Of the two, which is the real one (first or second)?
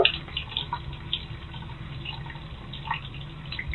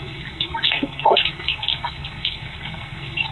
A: first